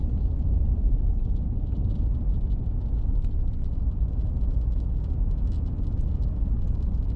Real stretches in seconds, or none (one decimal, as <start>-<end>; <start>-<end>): 0.0-7.2